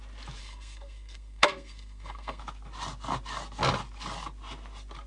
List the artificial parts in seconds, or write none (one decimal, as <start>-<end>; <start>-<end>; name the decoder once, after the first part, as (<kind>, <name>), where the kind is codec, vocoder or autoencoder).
0.4-2.4 (codec, SNAC)